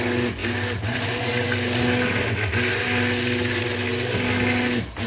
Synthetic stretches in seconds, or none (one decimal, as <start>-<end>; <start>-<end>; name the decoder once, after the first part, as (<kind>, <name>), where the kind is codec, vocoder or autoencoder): none